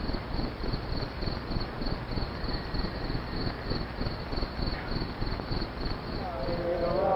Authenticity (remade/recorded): recorded